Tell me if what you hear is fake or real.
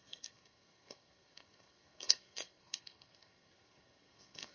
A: fake